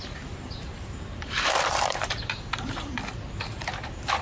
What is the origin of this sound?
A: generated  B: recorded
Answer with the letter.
A